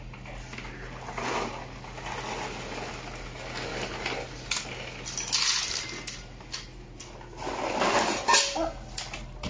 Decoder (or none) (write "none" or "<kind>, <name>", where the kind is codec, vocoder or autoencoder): none